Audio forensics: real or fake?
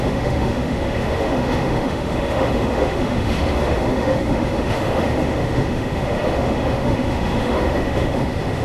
fake